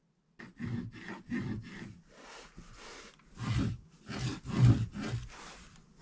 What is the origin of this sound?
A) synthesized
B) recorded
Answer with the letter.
B